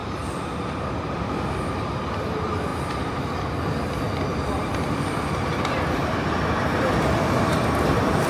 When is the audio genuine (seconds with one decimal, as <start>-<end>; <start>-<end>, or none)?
0.0-8.3